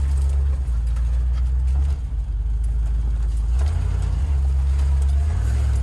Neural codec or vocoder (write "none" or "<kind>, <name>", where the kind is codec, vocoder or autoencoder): none